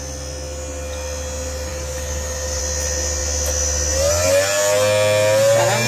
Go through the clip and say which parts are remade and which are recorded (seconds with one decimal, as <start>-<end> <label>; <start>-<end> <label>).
0.0-1.7 recorded; 1.7-2.6 remade; 2.6-5.9 recorded